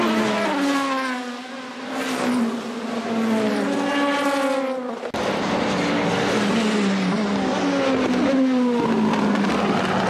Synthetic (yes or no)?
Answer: no